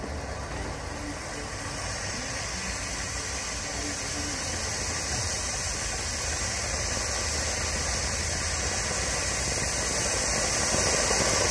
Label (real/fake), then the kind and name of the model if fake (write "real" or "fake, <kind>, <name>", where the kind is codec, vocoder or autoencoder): real